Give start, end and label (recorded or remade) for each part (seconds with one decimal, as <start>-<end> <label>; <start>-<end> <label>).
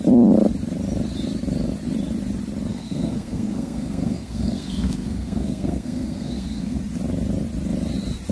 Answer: 0.0-2.7 recorded; 2.7-6.8 remade; 6.8-8.3 recorded